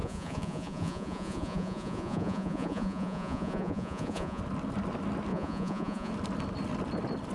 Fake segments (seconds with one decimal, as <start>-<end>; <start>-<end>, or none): 0.0-4.4; 5.3-6.1